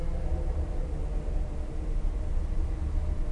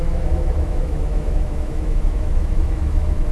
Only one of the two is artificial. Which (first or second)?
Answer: second